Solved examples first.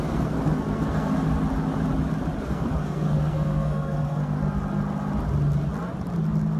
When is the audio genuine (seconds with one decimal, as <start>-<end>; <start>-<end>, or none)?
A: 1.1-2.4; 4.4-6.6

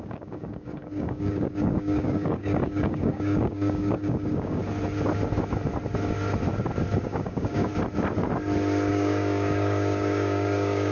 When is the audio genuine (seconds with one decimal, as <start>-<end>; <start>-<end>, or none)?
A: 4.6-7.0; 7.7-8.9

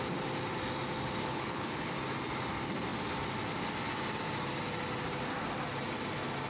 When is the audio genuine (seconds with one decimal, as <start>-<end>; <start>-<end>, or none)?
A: 0.0-1.2; 1.9-6.5

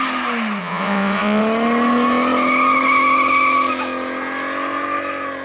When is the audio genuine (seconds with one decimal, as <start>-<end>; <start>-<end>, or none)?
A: 0.0-0.6; 1.4-5.4